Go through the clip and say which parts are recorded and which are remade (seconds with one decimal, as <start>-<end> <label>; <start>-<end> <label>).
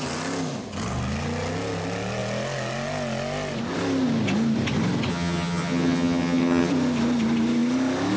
0.0-5.1 recorded; 5.1-6.7 remade; 6.7-8.2 recorded